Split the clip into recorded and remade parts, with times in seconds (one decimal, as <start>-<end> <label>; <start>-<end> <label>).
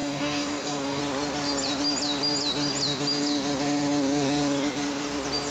0.0-1.0 remade; 1.0-5.5 recorded